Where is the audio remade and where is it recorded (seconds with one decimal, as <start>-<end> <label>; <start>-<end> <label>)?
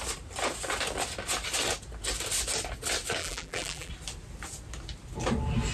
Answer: 0.0-3.2 recorded; 3.2-3.9 remade; 3.9-5.7 recorded